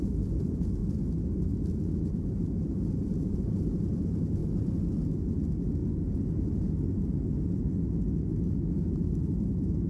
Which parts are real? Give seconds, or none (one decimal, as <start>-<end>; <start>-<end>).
0.8-2.0; 4.4-5.2; 5.8-8.7